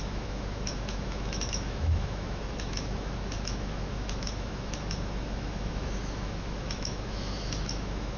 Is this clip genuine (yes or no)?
no